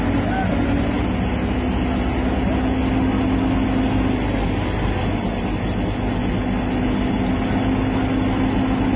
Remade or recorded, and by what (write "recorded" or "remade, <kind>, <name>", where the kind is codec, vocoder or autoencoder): recorded